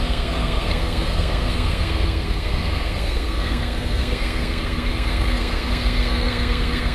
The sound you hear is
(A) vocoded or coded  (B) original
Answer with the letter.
A